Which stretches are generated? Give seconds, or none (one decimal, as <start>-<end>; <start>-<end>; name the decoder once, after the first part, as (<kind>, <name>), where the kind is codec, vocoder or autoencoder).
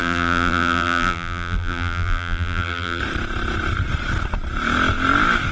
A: 0.0-3.0 (vocoder, BigVGAN v2)